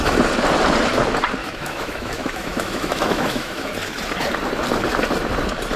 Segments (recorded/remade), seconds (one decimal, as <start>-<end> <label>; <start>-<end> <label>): 0.0-1.4 recorded; 1.4-3.7 remade; 3.7-5.8 recorded